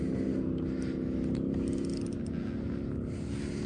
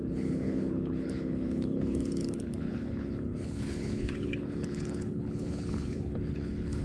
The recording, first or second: first